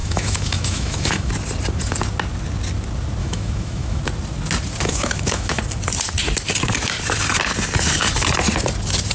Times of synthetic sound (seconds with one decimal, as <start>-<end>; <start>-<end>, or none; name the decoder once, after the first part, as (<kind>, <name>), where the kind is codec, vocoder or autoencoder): 0.0-1.3 (autoencoder, DAC-VAE); 3.2-4.0; 4.9-5.6